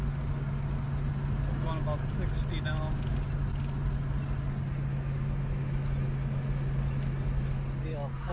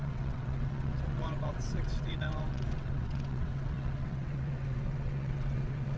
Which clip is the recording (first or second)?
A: first